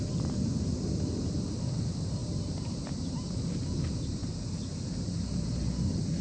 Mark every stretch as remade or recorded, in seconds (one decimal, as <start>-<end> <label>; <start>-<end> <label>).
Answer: 0.0-2.2 recorded; 2.2-3.6 remade; 3.6-4.2 recorded; 4.2-5.3 remade; 5.3-6.2 recorded